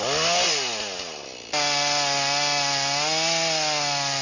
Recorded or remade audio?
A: recorded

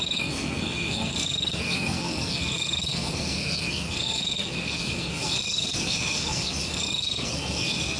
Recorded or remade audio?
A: remade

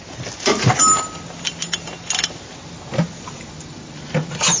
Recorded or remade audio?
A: recorded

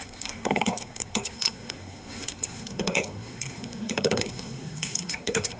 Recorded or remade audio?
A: remade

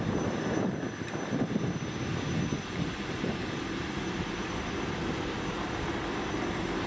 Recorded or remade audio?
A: remade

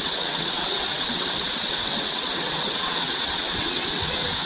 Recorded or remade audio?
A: remade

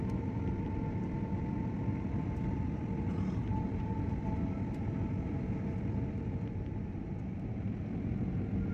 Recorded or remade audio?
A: remade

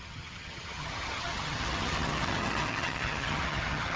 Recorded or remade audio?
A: remade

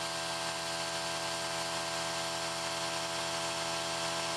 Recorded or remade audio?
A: recorded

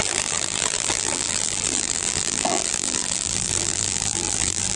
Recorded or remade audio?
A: remade